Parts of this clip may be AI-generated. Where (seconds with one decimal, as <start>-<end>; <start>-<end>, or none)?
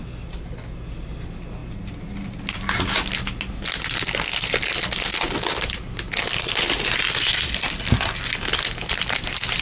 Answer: none